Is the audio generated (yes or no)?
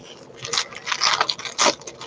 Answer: no